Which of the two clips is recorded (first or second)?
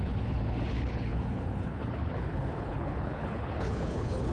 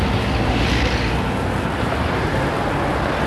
second